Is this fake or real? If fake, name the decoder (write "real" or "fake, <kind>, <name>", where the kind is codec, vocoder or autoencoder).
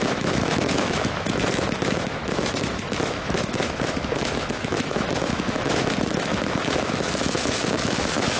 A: fake, autoencoder, DAC-VAE